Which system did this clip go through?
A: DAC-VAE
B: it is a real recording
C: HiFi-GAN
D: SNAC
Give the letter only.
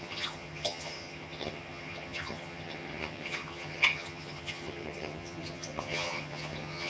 C